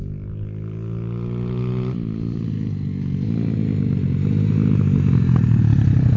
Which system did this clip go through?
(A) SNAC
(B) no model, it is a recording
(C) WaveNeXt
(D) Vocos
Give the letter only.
B